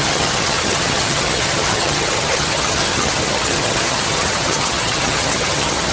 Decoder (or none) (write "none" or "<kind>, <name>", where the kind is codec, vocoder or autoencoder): vocoder, HiFi-GAN